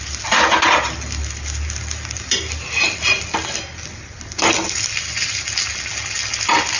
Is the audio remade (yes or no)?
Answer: no